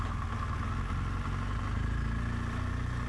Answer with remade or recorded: recorded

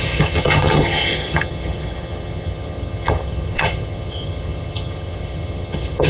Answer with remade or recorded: remade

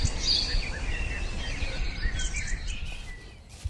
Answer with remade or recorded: recorded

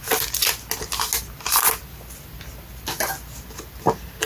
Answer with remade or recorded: recorded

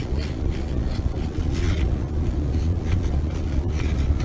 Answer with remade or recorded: remade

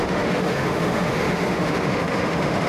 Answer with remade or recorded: remade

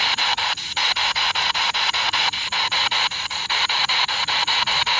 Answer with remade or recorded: remade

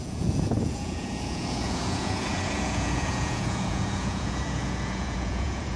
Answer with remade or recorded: remade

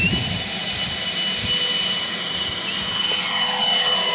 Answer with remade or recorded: recorded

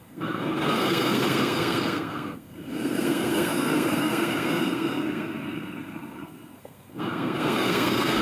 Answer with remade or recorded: remade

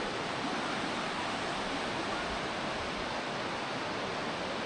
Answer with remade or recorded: recorded